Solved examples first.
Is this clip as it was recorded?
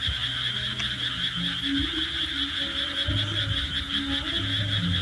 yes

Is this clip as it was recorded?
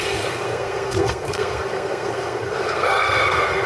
no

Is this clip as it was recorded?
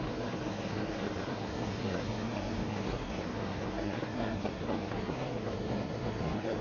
no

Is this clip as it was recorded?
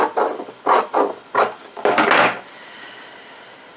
yes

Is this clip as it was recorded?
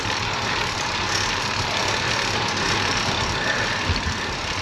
yes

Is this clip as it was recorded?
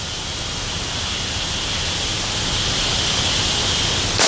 yes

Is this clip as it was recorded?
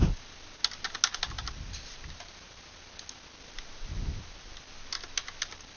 yes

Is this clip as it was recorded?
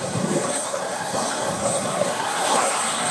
no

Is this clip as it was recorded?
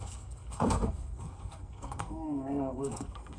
no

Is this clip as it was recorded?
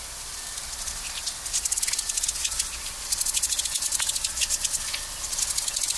yes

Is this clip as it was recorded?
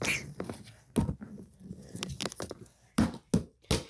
yes